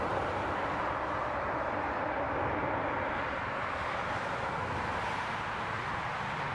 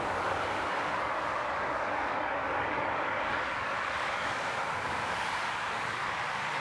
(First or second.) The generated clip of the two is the second